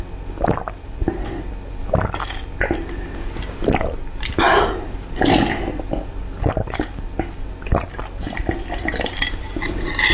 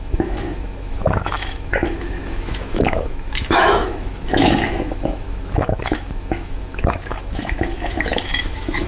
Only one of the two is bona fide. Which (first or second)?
first